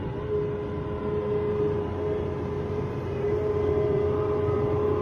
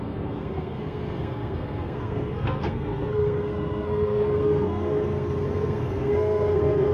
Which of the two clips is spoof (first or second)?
second